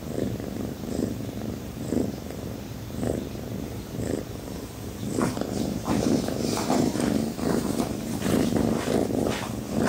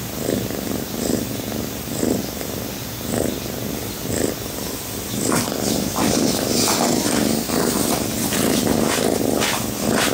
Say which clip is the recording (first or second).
second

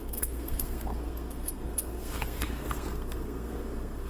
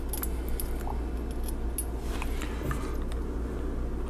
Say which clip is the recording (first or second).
second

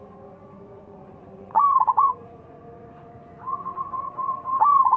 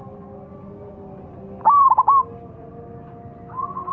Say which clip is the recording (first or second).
second